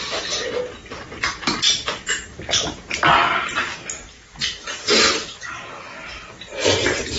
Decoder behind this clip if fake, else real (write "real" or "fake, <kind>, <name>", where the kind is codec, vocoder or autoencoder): real